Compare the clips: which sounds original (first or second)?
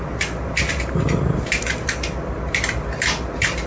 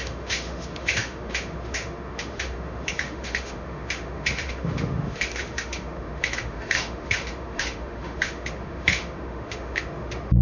first